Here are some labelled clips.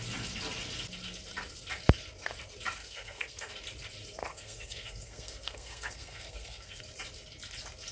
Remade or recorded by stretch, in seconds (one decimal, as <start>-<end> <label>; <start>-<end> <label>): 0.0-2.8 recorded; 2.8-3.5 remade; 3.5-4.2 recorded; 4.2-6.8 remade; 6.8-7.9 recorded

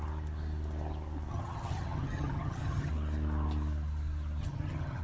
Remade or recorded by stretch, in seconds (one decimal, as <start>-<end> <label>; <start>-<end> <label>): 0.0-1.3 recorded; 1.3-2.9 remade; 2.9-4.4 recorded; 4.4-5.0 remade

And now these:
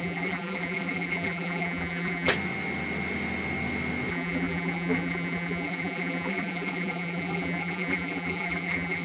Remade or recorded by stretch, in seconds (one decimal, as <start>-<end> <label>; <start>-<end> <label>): 0.0-2.3 remade; 2.3-4.1 recorded; 4.1-9.0 remade

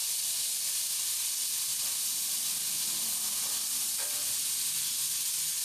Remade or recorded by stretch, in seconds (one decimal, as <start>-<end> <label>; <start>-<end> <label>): 0.0-5.6 recorded

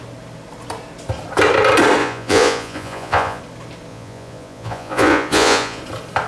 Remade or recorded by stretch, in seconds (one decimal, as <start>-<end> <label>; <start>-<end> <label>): 0.0-2.0 recorded; 2.0-3.4 remade; 3.4-3.9 recorded; 3.9-5.8 remade; 5.8-6.3 recorded

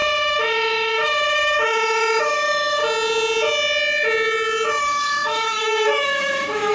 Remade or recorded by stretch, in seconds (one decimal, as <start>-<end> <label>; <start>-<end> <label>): 0.0-2.8 remade; 2.8-4.8 recorded; 4.8-6.7 remade

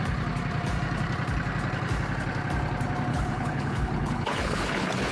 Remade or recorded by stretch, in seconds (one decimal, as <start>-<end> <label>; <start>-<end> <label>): 0.0-3.1 recorded; 3.1-5.1 remade

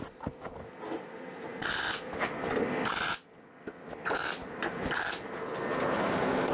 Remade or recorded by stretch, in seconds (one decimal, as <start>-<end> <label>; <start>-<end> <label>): 0.0-4.4 recorded; 4.4-5.1 remade; 5.1-6.5 recorded